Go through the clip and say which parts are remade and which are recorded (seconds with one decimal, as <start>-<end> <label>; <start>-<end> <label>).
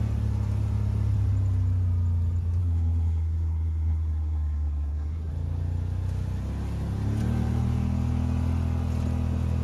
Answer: 0.0-2.6 recorded; 2.6-5.3 remade; 5.3-9.6 recorded